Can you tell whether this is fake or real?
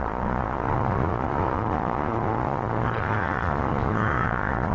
fake